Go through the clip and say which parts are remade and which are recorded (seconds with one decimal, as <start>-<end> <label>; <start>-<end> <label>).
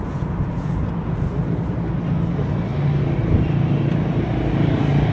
0.0-1.3 remade; 1.3-5.1 recorded